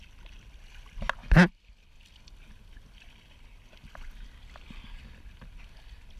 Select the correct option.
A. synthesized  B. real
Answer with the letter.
B